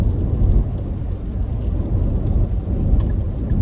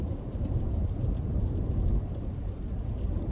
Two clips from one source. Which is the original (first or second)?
first